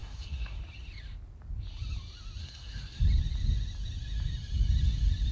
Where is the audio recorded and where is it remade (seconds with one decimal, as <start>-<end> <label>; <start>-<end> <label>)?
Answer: 0.0-0.6 remade; 0.6-2.4 recorded; 2.4-3.0 remade; 3.0-5.3 recorded